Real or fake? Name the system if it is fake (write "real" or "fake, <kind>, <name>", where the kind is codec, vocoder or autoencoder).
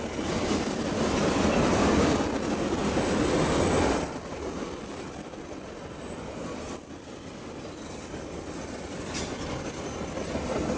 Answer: real